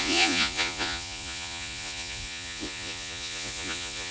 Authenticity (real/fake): fake